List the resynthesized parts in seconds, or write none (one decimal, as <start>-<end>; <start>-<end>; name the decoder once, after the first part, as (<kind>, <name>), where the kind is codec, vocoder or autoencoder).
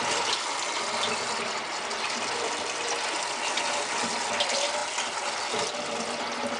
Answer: none